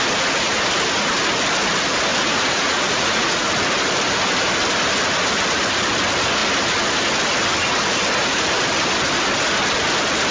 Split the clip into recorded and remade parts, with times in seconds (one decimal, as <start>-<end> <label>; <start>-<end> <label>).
0.0-2.1 recorded; 2.1-3.5 remade; 3.5-10.3 recorded